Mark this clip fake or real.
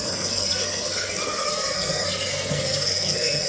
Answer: fake